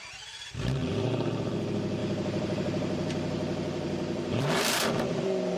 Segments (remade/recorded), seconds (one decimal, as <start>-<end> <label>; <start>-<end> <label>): 0.0-0.8 recorded; 0.8-1.5 remade; 1.5-2.0 recorded; 2.0-5.1 remade; 5.1-5.6 recorded